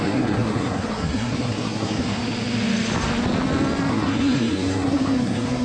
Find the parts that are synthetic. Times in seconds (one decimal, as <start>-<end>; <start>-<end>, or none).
0.0-2.2; 3.9-5.6